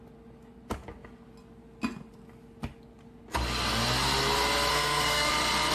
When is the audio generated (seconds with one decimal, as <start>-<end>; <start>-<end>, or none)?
4.7-5.3